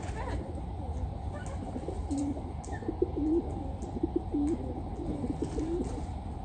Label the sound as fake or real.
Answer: real